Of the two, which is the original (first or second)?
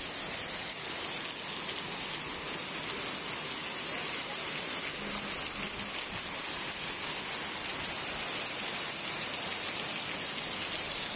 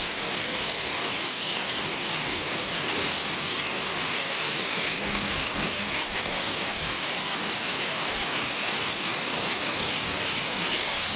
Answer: first